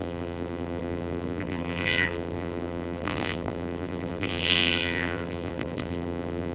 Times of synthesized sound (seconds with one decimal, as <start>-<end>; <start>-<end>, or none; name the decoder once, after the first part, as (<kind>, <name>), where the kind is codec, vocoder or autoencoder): 0.0-6.5 (vocoder, BigVGAN v2)